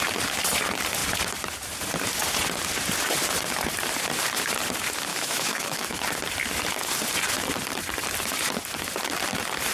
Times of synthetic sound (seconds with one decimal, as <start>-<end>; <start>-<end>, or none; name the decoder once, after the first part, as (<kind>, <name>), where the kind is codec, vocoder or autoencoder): 5.1-6.0 (autoencoder, DAC-VAE)